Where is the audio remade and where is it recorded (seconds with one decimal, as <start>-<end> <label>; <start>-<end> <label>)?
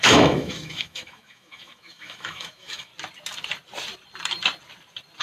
0.0-2.9 remade; 2.9-5.2 recorded